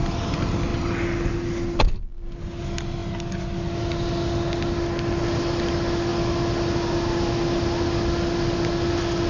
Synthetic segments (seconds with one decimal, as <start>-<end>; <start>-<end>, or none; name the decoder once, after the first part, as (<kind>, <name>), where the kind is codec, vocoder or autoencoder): none